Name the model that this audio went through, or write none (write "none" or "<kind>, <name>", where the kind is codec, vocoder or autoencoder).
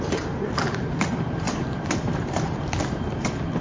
vocoder, BigVGAN v2